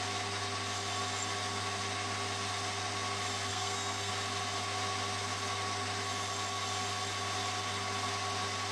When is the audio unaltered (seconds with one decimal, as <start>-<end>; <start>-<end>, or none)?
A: 0.0-3.5; 4.1-8.7